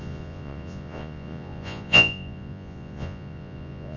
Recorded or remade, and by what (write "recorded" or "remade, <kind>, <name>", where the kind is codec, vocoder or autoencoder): remade, vocoder, Vocos